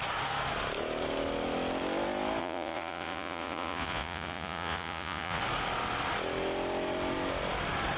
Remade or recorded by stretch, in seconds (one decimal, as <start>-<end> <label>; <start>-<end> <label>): 0.0-2.4 recorded; 2.4-5.4 remade; 5.4-8.0 recorded

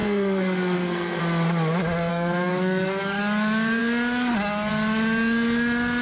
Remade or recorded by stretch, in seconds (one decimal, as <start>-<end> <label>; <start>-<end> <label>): 0.0-1.2 remade; 1.2-2.1 recorded; 2.1-3.2 remade; 3.2-6.0 recorded

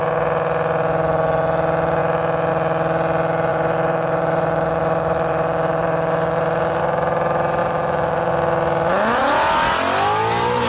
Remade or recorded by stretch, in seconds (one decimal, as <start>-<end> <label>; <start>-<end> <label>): 0.0-3.5 recorded; 3.5-6.8 remade; 6.8-7.6 recorded; 7.6-8.3 remade; 8.3-10.7 recorded